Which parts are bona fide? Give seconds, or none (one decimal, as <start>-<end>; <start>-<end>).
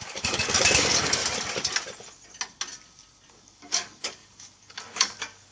1.2-3.3